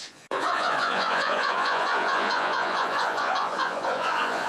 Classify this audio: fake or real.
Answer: fake